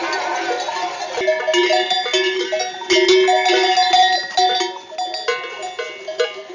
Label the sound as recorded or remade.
recorded